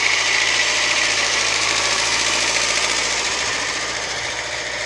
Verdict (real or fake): fake